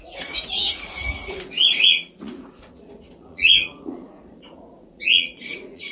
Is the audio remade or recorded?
remade